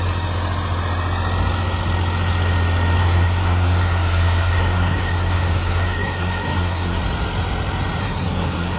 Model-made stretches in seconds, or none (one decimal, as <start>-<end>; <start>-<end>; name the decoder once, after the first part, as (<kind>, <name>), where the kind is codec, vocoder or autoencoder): 3.0-7.0 (codec, SNAC); 8.0-8.8